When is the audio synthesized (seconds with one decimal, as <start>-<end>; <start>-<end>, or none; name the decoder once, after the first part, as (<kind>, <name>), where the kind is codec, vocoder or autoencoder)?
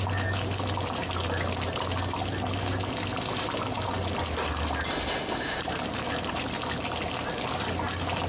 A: 4.9-5.6 (autoencoder, DAC-VAE)